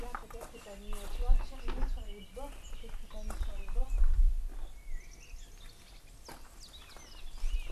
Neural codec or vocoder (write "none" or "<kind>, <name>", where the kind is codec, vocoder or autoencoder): none